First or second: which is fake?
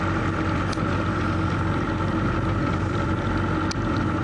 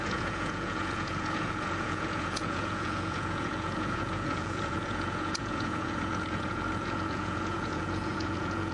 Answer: second